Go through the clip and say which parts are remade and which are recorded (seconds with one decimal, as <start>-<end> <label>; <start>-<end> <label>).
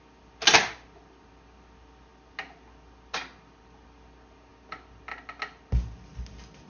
0.0-6.7 recorded